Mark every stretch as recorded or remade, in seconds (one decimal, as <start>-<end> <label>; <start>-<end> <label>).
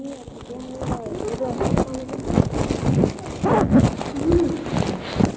0.0-5.4 recorded